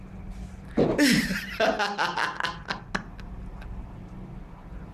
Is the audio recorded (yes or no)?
yes